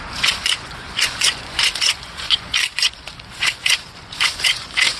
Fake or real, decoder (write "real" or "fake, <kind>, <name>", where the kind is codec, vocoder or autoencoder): fake, vocoder, Vocos